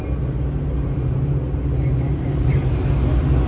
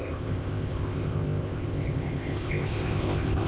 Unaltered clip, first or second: first